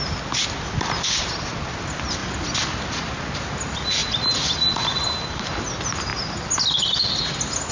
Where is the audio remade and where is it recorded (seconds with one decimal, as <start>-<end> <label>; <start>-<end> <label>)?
0.0-4.0 recorded; 4.0-5.2 remade; 5.2-7.7 recorded

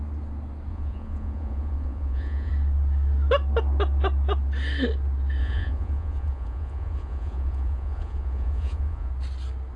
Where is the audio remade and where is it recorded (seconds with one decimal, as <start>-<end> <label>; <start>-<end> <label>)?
0.0-0.7 recorded; 0.7-2.5 remade; 2.5-5.4 recorded; 5.4-9.1 remade; 9.1-9.8 recorded

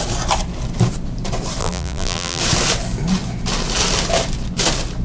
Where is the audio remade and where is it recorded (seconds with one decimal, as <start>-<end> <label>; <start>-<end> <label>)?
0.0-1.6 recorded; 1.6-2.4 remade; 2.4-5.0 recorded